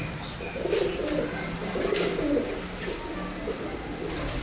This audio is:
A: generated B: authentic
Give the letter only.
B